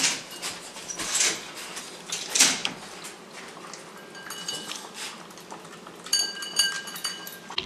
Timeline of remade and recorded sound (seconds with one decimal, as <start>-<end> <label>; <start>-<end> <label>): 0.0-2.6 remade; 2.6-4.6 recorded; 4.6-7.7 remade